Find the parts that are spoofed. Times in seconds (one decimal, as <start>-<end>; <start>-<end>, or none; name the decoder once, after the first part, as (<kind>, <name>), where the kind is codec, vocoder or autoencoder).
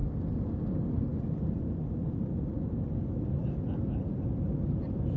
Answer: none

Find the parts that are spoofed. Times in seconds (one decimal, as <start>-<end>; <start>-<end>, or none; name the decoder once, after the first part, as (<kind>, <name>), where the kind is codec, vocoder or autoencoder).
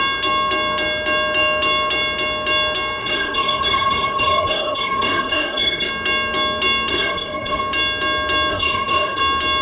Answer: 3.0-5.9 (codec, SNAC); 6.9-7.6; 8.5-9.2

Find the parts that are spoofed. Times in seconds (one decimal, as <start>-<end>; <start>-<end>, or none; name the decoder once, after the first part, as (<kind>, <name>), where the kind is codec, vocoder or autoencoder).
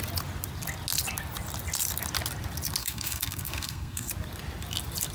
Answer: 2.8-4.1 (codec, SNAC)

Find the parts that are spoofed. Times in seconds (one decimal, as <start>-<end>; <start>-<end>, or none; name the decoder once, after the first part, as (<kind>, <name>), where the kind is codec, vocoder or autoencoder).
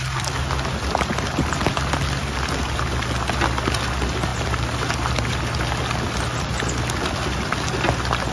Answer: none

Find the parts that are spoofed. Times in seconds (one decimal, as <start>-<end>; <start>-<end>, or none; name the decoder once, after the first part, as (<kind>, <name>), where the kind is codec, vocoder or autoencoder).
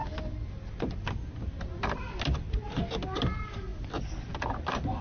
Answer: none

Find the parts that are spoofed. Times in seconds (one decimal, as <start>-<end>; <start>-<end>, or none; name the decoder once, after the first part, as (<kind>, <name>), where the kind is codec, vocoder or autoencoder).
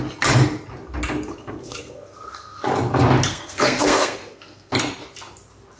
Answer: 1.4-2.7 (codec, SNAC); 3.3-4.7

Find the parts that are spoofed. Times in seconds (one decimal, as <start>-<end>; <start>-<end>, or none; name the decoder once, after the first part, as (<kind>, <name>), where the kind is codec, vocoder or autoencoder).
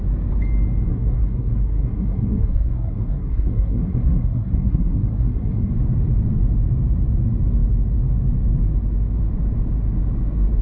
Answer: 0.9-5.7 (codec, SNAC)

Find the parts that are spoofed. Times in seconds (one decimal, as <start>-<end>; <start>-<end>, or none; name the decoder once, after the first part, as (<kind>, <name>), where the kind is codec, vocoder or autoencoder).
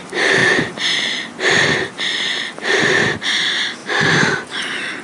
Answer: none